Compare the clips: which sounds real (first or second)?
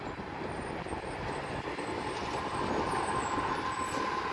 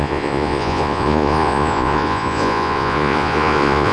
first